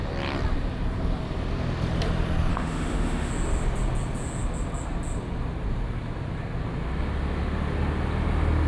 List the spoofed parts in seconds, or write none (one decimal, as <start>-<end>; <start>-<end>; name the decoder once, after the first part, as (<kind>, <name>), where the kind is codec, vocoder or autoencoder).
2.5-3.3 (autoencoder, DAC-VAE)

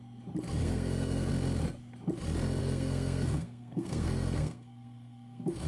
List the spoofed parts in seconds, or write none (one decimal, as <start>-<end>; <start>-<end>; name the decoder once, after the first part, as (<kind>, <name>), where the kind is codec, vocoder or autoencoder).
0.6-1.3 (codec, SNAC); 2.6-5.7

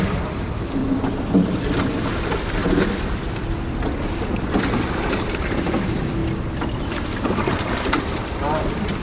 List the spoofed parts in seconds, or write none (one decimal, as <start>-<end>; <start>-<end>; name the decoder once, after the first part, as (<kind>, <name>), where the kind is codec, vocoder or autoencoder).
0.0-0.8 (vocoder, BigVGAN v2); 5.1-6.2; 6.8-9.0

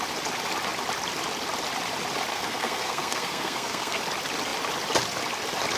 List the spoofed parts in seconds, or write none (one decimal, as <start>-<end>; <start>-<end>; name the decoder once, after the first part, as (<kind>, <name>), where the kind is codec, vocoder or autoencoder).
2.3-4.0 (codec, SNAC)

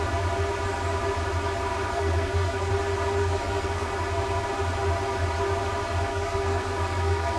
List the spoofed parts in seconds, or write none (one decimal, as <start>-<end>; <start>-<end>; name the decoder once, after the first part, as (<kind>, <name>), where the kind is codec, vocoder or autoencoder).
1.9-2.7 (codec, SNAC); 3.2-3.9; 6.1-7.4

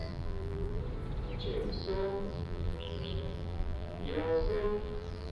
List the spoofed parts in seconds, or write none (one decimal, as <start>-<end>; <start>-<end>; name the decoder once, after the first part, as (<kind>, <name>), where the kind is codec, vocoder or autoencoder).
0.0-0.8 (vocoder, BigVGAN v2); 1.8-5.3

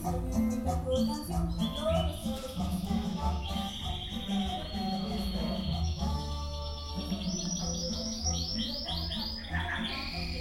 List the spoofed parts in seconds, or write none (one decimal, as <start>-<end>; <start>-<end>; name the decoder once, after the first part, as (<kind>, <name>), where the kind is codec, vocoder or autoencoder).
2.2-3.7 (autoencoder, DAC-VAE); 4.4-6.9; 7.8-8.7